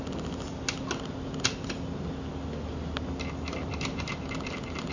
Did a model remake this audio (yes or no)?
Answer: no